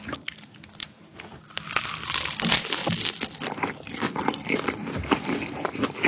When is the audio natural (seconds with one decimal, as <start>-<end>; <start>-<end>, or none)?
0.0-0.8; 1.4-6.1